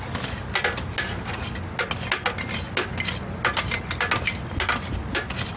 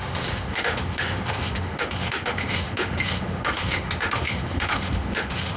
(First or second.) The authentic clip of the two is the first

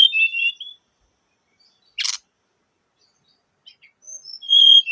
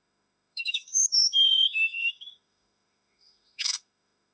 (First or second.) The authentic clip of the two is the first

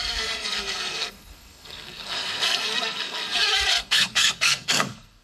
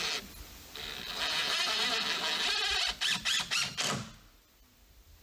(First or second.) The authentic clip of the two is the second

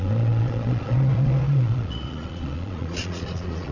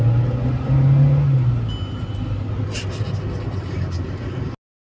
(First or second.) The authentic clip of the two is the second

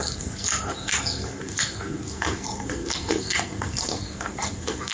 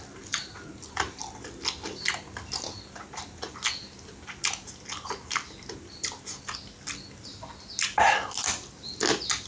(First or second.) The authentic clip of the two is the second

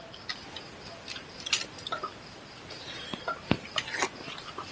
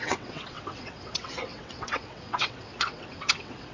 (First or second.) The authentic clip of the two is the first